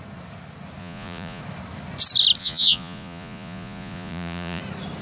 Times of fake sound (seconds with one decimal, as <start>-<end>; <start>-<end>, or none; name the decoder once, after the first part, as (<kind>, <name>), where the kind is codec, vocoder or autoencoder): 0.8-1.4 (vocoder, Vocos); 2.4-4.6